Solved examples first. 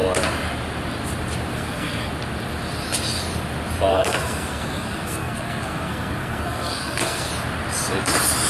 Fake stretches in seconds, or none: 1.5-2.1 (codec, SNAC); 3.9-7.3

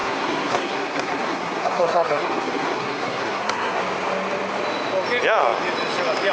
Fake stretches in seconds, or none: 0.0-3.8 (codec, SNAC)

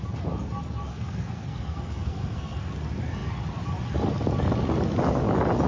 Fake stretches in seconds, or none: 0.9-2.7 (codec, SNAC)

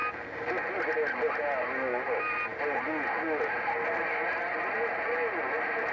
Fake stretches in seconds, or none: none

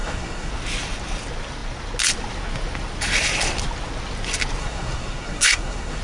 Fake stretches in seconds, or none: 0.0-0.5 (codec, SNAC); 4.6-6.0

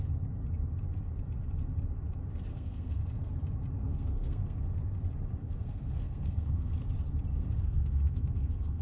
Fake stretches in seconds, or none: 2.5-3.3 (codec, SNAC); 3.8-4.6; 5.4-6.7; 7.3-8.8

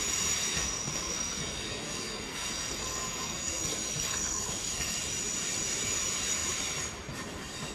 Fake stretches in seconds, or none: 0.4-5.0 (codec, SNAC)